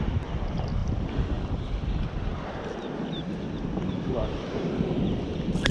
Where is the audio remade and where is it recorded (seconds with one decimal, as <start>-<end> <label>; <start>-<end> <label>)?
0.0-0.8 recorded; 0.8-1.3 remade; 1.3-5.7 recorded